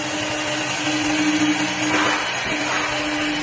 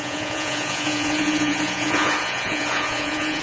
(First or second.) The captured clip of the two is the first